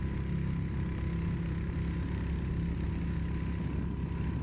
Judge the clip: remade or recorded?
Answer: recorded